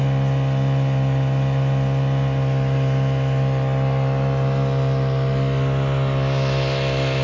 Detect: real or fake real